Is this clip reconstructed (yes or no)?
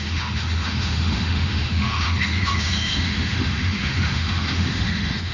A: yes